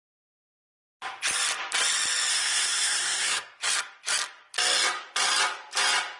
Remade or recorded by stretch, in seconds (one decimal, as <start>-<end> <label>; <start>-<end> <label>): 0.0-2.3 recorded; 2.3-3.6 remade; 3.6-6.2 recorded